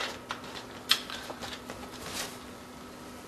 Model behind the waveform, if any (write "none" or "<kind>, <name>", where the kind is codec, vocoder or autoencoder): none